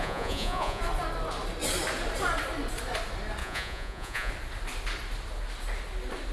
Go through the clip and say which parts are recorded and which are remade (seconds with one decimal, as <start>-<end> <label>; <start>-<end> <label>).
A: 0.0-0.8 remade; 0.8-3.4 recorded; 3.4-4.3 remade; 4.3-6.3 recorded